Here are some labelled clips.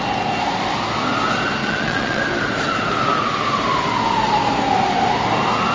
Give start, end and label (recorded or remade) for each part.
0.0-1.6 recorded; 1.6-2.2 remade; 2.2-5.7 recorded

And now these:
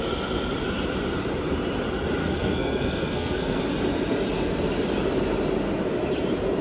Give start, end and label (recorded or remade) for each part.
0.0-2.2 recorded; 2.2-3.6 remade; 3.6-6.6 recorded

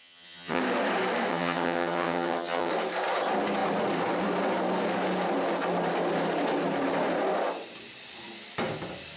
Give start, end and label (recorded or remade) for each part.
0.0-0.6 remade; 0.6-1.3 recorded; 1.3-2.7 remade; 2.7-9.2 recorded

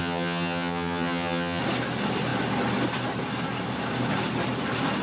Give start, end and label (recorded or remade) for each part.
0.0-1.6 remade; 1.6-5.0 recorded

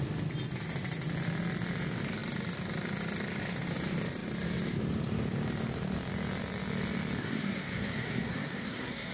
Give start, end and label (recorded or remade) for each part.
0.0-7.2 recorded; 7.2-9.1 remade

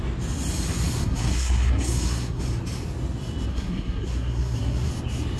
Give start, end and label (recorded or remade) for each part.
0.0-0.9 recorded; 0.9-2.4 remade; 2.4-3.5 recorded; 3.5-4.9 remade; 4.9-5.4 recorded

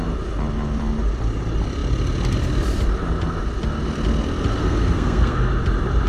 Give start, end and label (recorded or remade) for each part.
0.0-4.5 recorded; 4.5-5.5 remade; 5.5-6.1 recorded

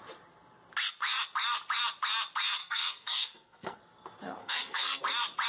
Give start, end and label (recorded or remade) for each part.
0.0-2.6 recorded; 2.6-3.8 remade; 3.8-4.4 recorded; 4.4-5.0 remade; 5.0-5.5 recorded